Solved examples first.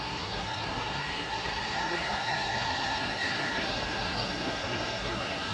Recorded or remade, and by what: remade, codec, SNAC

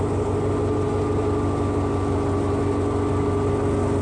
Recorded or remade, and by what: recorded